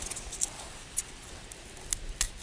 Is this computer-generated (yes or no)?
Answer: no